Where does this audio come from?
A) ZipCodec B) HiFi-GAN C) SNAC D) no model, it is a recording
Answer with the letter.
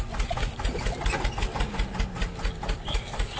D